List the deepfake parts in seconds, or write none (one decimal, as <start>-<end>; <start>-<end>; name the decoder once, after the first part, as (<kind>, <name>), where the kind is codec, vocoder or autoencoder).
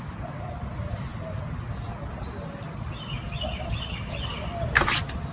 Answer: none